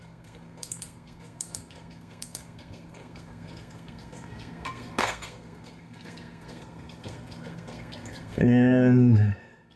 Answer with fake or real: fake